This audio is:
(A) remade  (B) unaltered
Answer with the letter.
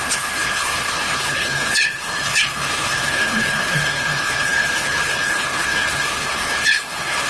A